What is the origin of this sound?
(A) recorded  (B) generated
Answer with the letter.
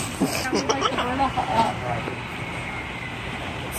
A